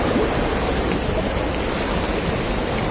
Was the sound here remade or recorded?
recorded